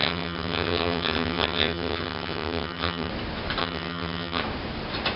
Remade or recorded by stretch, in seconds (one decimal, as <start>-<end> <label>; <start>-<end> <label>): 0.0-3.1 remade; 3.1-3.6 recorded; 3.6-4.4 remade; 4.4-5.2 recorded